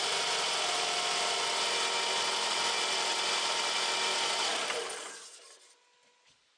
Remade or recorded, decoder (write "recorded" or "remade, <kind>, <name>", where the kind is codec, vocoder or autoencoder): recorded